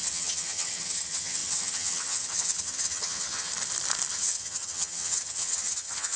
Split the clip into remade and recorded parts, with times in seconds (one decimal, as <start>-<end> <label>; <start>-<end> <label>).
0.0-3.5 remade; 3.5-4.1 recorded; 4.1-6.2 remade